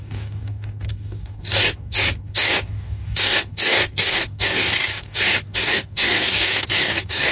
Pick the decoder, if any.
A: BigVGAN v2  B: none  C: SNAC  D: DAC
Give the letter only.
D